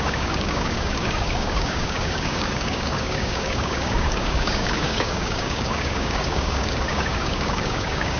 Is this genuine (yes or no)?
no